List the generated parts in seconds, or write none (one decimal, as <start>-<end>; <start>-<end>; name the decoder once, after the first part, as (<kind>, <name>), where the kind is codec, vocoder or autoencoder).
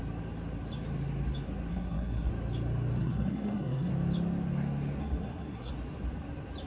1.7-2.3 (codec, SNAC); 3.0-3.9; 5.0-5.7